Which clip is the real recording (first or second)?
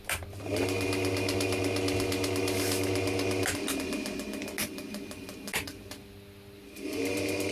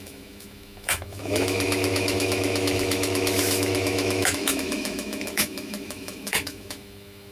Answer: first